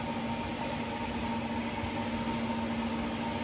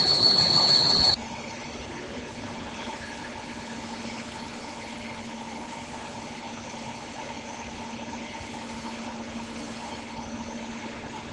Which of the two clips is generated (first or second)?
second